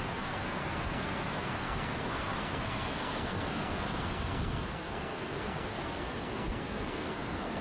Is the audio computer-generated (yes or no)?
yes